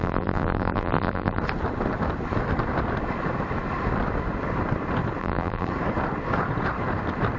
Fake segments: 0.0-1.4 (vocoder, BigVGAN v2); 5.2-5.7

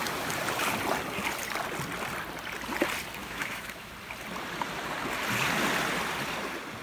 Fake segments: 3.2-3.9 (autoencoder, DAC-VAE)

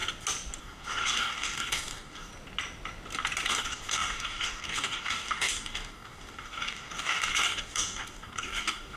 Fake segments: 0.6-2.3 (codec, DAC); 3.5-9.0

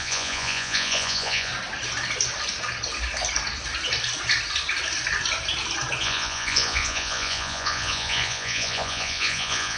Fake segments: 0.0-1.5 (vocoder, Vocos); 6.0-9.8

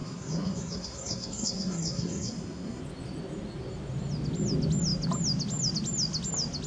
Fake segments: 0.0-2.8 (codec, SNAC)

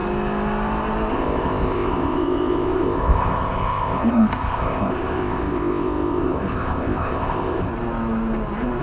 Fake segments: 1.1-7.7 (codec, ZipCodec)

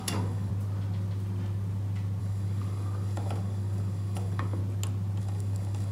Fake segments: 0.0-0.5 (codec, DAC); 2.2-4.6; 5.2-5.9

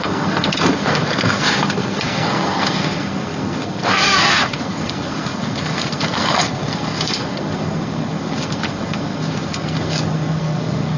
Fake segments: 0.0-11.0 (codec, SNAC)